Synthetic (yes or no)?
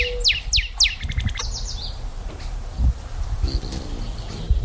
no